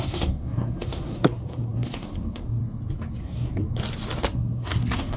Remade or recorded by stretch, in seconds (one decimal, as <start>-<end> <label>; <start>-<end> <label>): 0.0-2.6 remade; 2.6-3.2 recorded; 3.2-3.6 remade; 3.6-4.2 recorded; 4.2-5.2 remade